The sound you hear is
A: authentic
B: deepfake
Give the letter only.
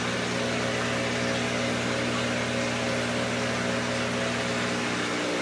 A